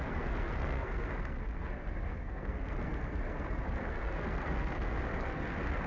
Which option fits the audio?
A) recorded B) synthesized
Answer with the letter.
B